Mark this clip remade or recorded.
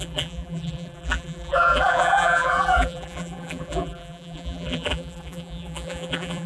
remade